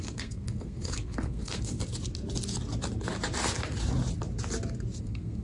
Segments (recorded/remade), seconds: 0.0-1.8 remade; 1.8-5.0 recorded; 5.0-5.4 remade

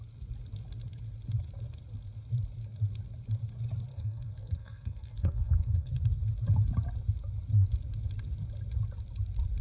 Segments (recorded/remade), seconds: 0.0-3.9 recorded; 3.9-5.9 remade; 5.9-9.6 recorded

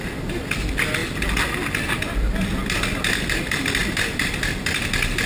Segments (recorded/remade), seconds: 0.0-5.3 recorded

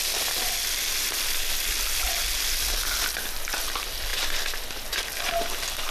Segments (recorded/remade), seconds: 0.0-5.9 recorded

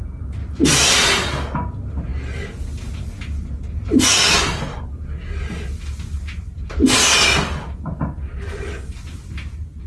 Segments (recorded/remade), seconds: 0.0-9.9 recorded

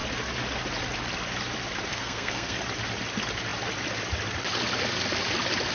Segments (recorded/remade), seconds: 0.0-1.9 recorded; 1.9-2.6 remade; 2.6-5.7 recorded

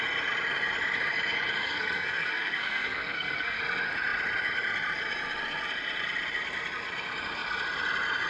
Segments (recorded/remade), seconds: 0.0-1.6 recorded; 1.6-3.6 remade; 3.6-8.3 recorded